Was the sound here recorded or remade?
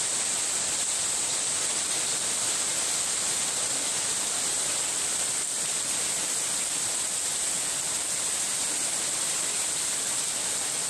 recorded